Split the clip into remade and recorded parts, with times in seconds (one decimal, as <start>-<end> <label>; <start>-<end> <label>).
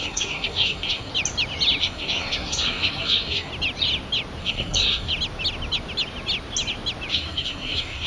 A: 0.0-1.1 remade; 1.1-1.8 recorded; 1.8-3.5 remade; 3.5-4.4 recorded; 4.4-5.1 remade; 5.1-7.1 recorded; 7.1-8.1 remade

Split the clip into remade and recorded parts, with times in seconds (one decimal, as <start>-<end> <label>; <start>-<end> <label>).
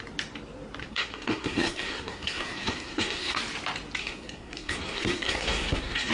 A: 0.0-0.8 recorded; 0.8-3.4 remade; 3.4-4.0 recorded; 4.0-6.1 remade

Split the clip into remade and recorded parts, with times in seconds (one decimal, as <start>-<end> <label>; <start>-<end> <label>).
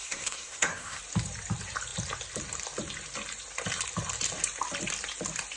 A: 0.0-1.0 remade; 1.0-5.6 recorded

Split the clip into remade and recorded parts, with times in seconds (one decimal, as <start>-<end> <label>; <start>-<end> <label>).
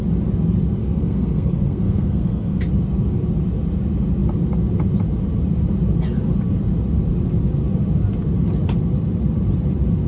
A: 0.0-0.8 recorded; 0.8-2.6 remade; 2.6-10.1 recorded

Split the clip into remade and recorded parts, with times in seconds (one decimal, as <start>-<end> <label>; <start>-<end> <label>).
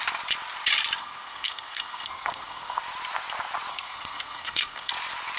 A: 0.0-1.0 recorded; 1.0-2.8 remade; 2.8-3.7 recorded; 3.7-4.9 remade; 4.9-5.4 recorded